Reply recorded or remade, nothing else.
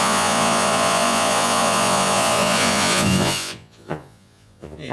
remade